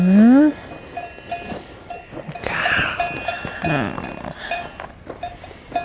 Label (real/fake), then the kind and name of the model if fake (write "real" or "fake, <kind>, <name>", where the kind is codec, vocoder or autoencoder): real